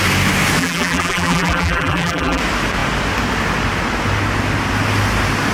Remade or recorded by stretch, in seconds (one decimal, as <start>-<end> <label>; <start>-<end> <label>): 0.0-0.6 recorded; 0.6-2.4 remade; 2.4-5.5 recorded